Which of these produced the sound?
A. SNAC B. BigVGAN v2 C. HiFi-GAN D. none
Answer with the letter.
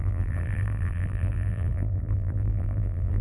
B